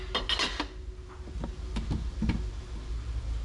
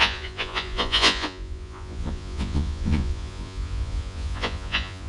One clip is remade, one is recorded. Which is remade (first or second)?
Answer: second